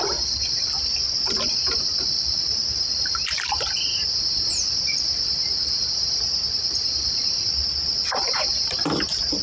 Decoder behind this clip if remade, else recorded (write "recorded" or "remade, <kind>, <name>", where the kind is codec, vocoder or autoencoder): remade, vocoder, BigVGAN v2